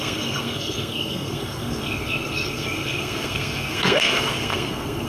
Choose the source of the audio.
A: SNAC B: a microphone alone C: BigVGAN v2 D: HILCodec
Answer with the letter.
A